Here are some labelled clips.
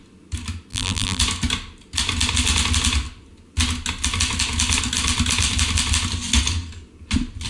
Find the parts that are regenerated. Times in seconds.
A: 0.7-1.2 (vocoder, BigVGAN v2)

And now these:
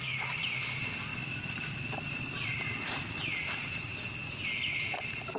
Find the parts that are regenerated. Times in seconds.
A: none

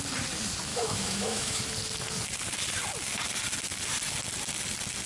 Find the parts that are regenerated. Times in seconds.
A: 0.7-1.6 (autoencoder, DAC-VAE)

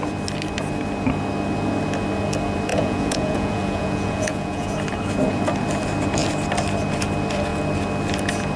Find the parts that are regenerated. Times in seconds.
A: 2.7-4.7 (vocoder, Vocos)

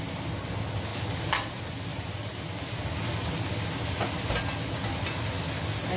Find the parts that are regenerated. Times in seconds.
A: none

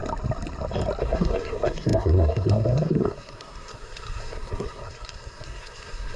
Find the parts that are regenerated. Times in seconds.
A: 1.0-6.2 (codec, SNAC)

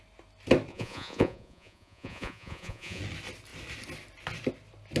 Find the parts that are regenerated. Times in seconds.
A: 0.7-3.0 (vocoder, Vocos)

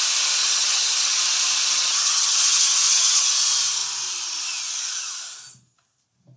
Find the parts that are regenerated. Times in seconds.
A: 0.4-1.2 (vocoder, HiFi-GAN); 1.7-3.3